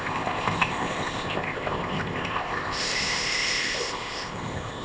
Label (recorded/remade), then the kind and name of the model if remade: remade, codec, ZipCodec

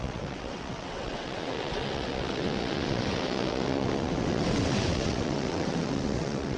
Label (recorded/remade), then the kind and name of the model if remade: remade, vocoder, WaveNeXt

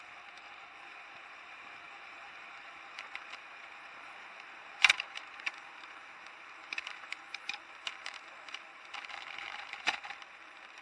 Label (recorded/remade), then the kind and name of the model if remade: remade, vocoder, BigVGAN v2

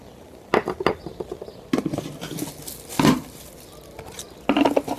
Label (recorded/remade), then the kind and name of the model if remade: recorded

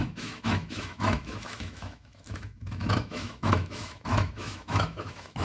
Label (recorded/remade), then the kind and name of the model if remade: remade, autoencoder, DAC-VAE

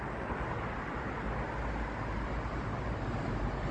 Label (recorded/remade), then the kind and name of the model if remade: recorded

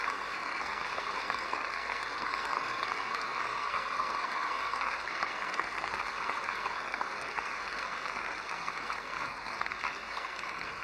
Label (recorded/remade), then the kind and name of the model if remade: remade, codec, SNAC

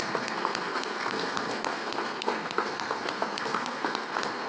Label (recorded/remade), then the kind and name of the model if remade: remade, codec, SNAC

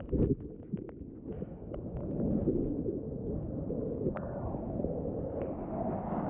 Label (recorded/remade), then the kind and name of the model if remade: recorded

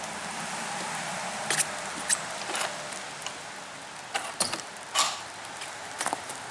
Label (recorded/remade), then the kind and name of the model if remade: recorded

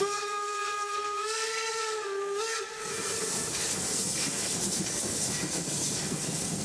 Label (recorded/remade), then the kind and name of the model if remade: remade, codec, SNAC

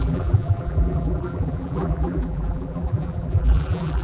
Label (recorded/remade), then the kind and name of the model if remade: remade, vocoder, BigVGAN v2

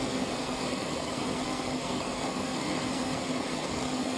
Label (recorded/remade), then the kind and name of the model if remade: remade, codec, SNAC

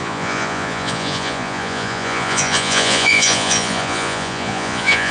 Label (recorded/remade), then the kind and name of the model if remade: remade, vocoder, Vocos